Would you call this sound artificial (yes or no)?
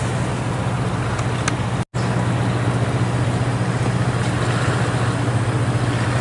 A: no